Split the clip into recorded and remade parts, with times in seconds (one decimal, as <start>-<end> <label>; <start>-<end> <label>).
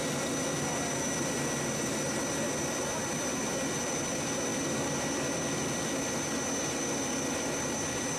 0.0-8.2 recorded